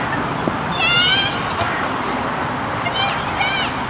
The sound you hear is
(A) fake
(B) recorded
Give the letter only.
B